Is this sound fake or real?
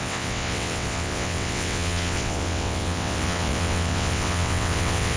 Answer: fake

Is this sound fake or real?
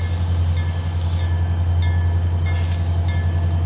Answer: real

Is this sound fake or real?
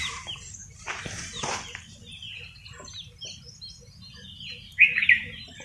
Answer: real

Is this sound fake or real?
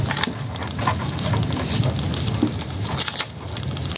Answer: real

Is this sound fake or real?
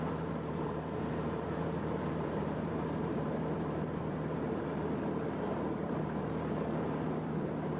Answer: fake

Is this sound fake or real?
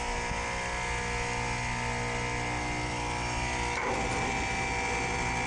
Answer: real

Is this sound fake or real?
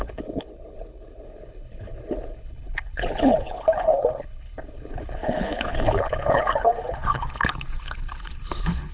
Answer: fake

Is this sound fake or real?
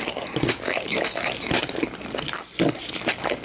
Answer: real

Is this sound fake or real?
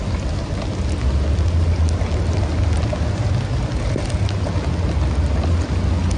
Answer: real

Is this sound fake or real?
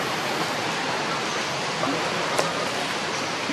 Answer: real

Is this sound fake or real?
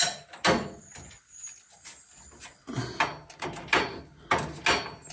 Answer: real